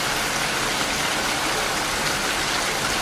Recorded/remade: recorded